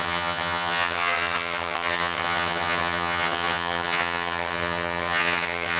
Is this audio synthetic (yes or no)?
yes